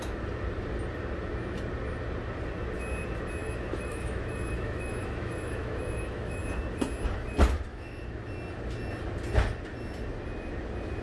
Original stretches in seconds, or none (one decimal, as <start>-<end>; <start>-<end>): 0.0-3.4; 6.4-7.7; 8.3-11.0